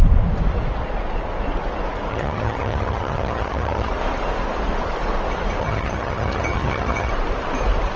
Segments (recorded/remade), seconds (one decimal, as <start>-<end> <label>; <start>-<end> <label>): 0.0-2.1 recorded; 2.1-3.9 remade; 3.9-5.6 recorded; 5.6-7.1 remade; 7.1-8.0 recorded